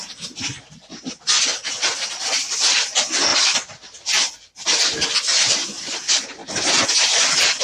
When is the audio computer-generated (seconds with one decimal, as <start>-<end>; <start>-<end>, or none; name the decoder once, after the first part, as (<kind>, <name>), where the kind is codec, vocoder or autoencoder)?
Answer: 0.0-7.6 (vocoder, BigVGAN v2)